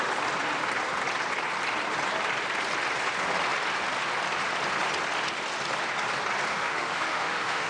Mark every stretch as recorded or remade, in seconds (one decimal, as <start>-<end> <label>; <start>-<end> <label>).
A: 0.0-6.5 recorded; 6.5-7.7 remade